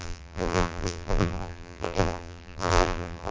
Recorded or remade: remade